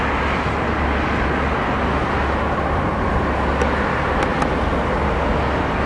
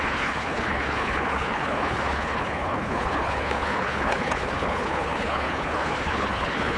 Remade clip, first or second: second